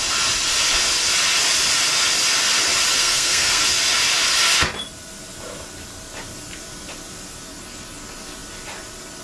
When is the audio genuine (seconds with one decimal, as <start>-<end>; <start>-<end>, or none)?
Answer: 0.0-3.0; 3.6-9.2